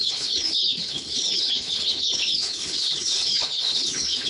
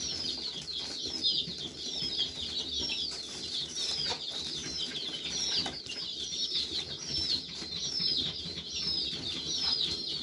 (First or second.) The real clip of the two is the second